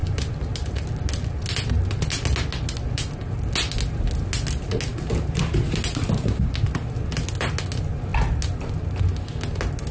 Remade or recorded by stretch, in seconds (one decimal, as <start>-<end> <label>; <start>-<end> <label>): 0.0-9.9 recorded